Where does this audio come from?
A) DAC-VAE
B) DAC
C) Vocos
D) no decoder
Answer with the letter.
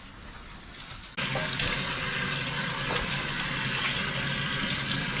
D